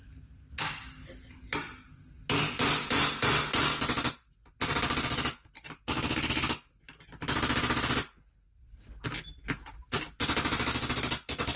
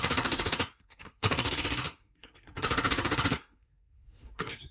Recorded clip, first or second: first